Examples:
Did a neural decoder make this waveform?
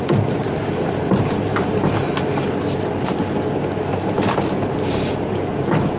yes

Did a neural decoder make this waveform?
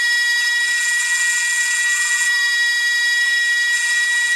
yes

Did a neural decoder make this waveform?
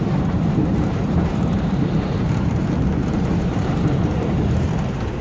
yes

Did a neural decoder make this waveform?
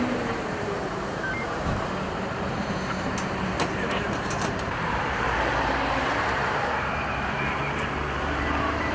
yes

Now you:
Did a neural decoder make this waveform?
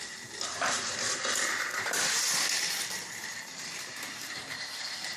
yes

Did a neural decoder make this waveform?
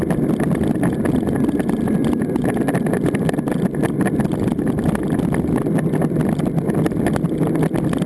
yes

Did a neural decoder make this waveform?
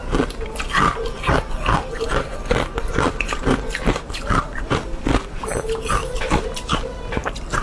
yes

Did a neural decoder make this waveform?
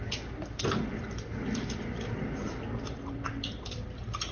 yes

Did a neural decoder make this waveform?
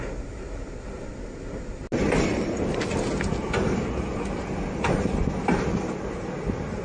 no